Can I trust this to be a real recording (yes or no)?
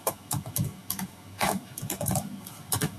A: no